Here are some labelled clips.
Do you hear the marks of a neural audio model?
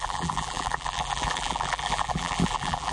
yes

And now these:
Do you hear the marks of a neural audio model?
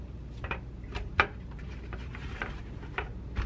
yes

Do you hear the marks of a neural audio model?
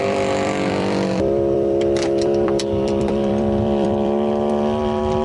yes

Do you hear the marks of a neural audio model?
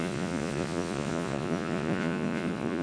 yes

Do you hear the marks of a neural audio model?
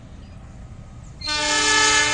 no